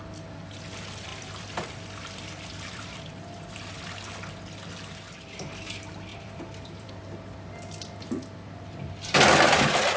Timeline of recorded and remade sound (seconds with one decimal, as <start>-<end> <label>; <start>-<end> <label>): 0.0-1.1 recorded; 1.1-3.0 remade; 3.0-6.1 recorded; 6.1-6.9 remade; 6.9-10.0 recorded